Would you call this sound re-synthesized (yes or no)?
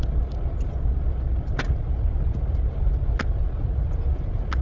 no